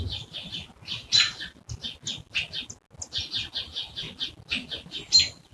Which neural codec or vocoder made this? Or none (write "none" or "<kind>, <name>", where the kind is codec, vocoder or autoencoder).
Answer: none